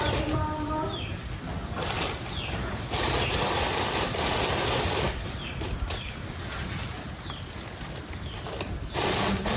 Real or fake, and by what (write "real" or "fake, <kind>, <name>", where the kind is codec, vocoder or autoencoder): real